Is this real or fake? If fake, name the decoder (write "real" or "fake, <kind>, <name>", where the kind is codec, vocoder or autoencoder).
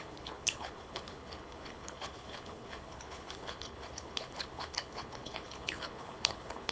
fake, codec, HILCodec